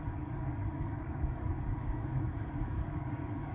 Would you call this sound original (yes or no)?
no